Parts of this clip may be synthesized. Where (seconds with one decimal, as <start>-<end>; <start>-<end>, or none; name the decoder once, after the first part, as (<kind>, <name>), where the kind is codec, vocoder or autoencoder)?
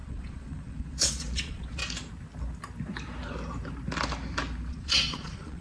0.0-1.8 (vocoder, Vocos); 4.7-5.6